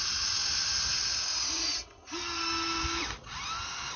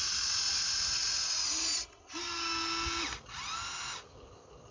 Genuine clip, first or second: second